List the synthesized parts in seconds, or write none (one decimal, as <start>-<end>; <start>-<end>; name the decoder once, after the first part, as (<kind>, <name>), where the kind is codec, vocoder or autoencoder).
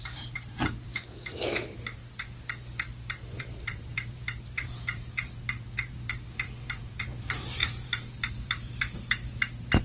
0.0-2.0 (vocoder, BigVGAN v2); 3.4-9.8